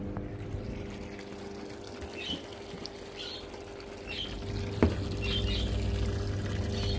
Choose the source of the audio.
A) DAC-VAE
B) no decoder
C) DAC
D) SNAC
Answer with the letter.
B